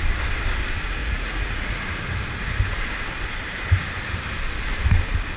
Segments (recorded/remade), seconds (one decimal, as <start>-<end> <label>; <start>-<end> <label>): 0.0-1.0 recorded; 1.0-1.8 remade; 1.8-5.4 recorded